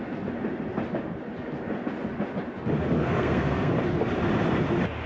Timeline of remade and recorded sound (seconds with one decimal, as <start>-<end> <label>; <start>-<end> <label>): 0.0-3.0 recorded; 3.0-3.7 remade; 3.7-5.1 recorded